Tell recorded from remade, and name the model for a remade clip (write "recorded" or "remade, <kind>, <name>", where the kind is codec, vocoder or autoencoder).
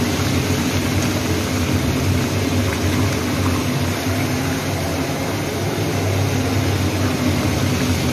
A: recorded